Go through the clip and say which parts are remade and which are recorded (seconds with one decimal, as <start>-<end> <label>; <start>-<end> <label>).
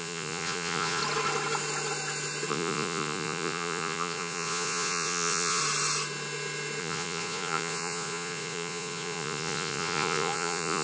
0.0-1.0 remade; 1.0-2.5 recorded; 2.5-5.6 remade; 5.6-6.8 recorded; 6.8-10.8 remade